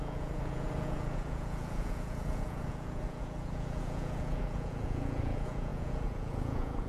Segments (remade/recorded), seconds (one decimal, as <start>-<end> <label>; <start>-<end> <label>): 0.0-6.9 remade

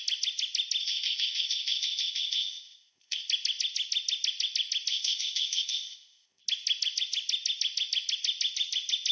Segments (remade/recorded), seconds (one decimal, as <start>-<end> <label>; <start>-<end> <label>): 0.0-0.8 recorded; 0.8-3.3 remade; 3.3-4.9 recorded; 4.9-6.4 remade; 6.4-9.1 recorded

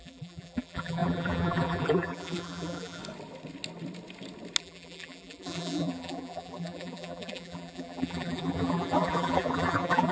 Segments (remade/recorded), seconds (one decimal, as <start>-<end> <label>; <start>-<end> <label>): 0.0-3.0 remade; 3.0-4.6 recorded; 4.6-10.1 remade

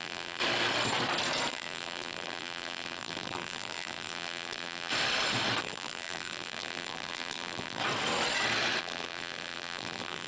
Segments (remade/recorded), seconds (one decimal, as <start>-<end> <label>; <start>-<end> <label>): 0.0-0.4 remade; 0.4-1.5 recorded; 1.5-4.9 remade; 4.9-5.6 recorded; 5.6-7.8 remade; 7.8-8.8 recorded; 8.8-10.3 remade